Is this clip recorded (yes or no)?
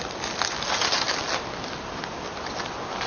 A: yes